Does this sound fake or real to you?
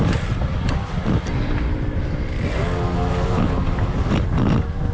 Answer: real